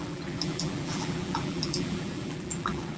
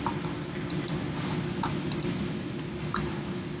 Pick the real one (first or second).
second